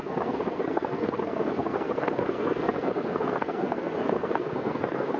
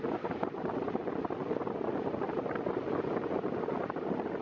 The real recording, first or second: second